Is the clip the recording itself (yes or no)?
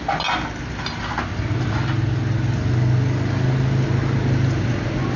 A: yes